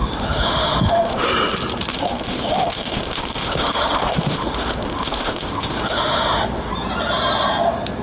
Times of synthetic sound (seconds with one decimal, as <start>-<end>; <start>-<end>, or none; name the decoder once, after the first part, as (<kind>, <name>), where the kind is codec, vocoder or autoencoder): 0.0-1.3 (autoencoder, DAC-VAE); 1.9-6.7